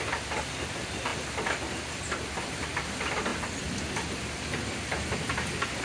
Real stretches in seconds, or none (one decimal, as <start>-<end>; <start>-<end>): 0.0-5.8